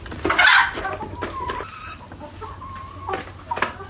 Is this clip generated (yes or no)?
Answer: no